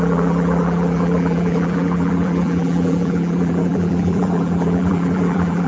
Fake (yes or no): yes